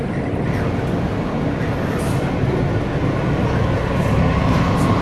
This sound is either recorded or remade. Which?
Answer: recorded